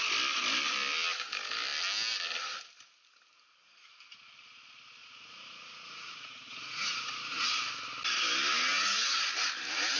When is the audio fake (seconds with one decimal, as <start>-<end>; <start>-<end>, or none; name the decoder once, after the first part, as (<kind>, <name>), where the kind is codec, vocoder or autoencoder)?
5.0-7.4 (vocoder, Vocos)